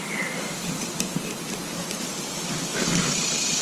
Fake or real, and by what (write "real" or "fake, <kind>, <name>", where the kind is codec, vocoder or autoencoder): real